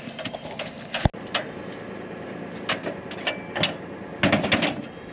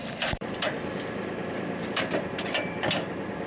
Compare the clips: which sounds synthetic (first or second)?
second